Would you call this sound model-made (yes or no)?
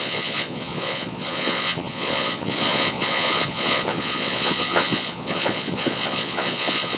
yes